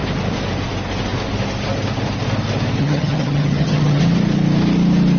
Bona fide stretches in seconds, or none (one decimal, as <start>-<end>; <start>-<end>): 0.0-2.8; 4.0-5.2